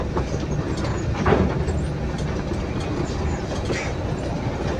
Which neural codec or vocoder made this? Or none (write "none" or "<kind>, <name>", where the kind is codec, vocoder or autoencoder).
none